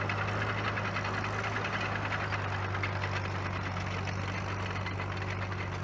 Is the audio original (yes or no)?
yes